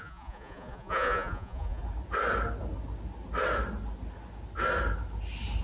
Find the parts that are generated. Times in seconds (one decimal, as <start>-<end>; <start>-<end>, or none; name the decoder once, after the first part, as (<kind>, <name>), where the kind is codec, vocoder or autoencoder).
0.0-1.8 (vocoder, Vocos)